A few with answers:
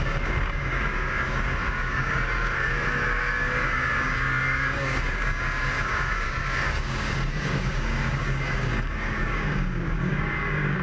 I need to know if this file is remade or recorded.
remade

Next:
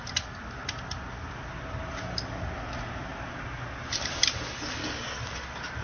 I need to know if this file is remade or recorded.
recorded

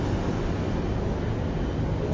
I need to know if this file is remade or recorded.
recorded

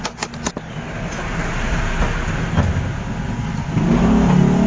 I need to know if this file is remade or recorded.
recorded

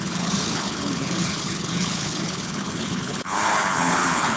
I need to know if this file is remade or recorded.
remade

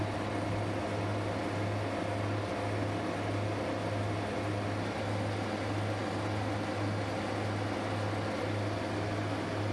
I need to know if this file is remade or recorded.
recorded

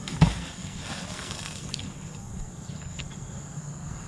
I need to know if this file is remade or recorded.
remade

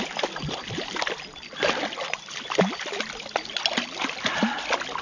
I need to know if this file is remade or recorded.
recorded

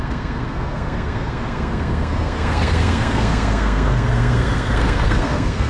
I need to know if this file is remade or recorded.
remade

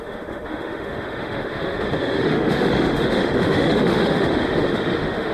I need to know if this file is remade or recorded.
remade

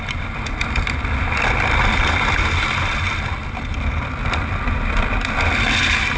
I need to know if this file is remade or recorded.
remade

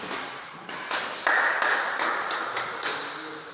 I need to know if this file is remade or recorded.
recorded